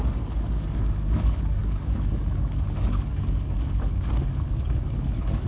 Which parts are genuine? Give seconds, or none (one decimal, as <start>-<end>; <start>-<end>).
none